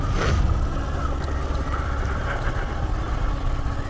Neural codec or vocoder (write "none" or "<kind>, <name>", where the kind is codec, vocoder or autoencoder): none